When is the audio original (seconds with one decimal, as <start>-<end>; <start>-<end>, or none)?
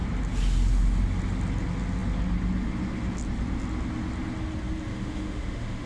0.0-4.9